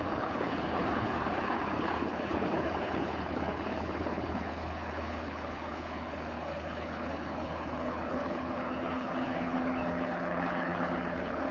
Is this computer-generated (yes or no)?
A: yes